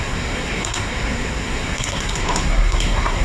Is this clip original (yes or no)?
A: no